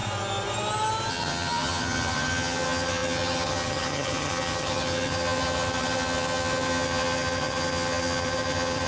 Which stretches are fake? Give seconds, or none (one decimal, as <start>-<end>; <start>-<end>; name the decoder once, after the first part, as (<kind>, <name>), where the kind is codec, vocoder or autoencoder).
1.1-8.9 (vocoder, HiFi-GAN)